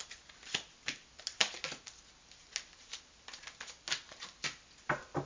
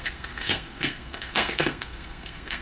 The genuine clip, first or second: first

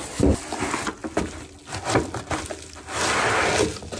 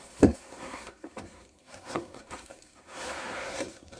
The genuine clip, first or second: first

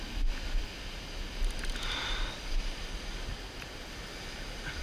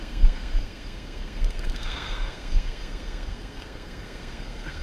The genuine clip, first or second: first